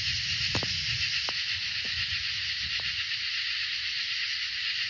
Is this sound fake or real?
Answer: real